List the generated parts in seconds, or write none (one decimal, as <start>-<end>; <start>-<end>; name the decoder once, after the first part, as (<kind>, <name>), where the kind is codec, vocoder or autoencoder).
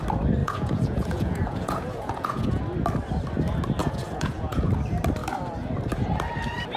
0.4-2.6 (vocoder, Vocos); 3.8-4.7